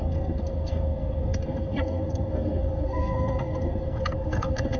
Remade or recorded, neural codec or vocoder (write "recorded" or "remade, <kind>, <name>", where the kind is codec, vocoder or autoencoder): remade, codec, SNAC